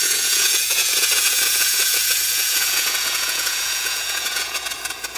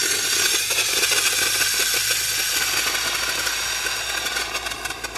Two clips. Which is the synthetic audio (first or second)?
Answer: first